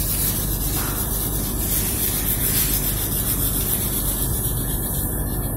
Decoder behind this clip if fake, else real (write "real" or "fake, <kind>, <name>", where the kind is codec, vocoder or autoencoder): real